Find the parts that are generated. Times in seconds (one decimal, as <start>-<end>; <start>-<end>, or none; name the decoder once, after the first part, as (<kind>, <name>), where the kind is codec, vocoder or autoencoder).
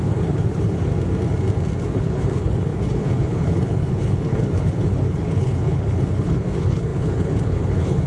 0.0-0.9 (codec, HILCodec); 1.8-8.1